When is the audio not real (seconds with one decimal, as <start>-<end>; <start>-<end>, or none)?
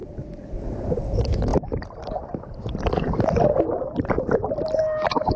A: 3.7-4.5